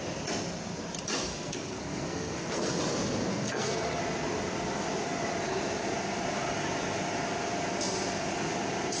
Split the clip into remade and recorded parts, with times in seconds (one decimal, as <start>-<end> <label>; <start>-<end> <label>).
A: 0.0-1.3 recorded; 1.3-2.8 remade; 2.8-3.3 recorded; 3.3-4.0 remade; 4.0-9.0 recorded

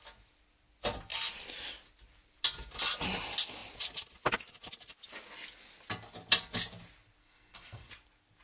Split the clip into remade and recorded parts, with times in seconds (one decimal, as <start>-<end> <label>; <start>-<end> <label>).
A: 0.0-7.2 recorded; 7.2-7.9 remade; 7.9-8.4 recorded